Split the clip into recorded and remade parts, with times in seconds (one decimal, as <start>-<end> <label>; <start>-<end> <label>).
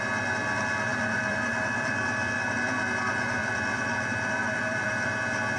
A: 0.0-0.9 recorded; 0.9-2.6 remade; 2.6-3.4 recorded; 3.4-5.1 remade; 5.1-5.6 recorded